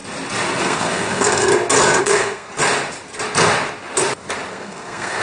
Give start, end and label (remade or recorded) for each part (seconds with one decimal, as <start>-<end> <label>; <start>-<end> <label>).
0.0-0.6 recorded; 0.6-1.5 remade; 1.5-2.0 recorded; 2.0-2.5 remade; 2.5-4.5 recorded; 4.5-5.2 remade